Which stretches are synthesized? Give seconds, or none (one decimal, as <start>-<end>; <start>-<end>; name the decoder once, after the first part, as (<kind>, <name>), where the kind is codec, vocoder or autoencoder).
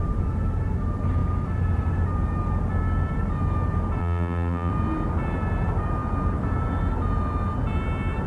4.0-4.7 (vocoder, BigVGAN v2)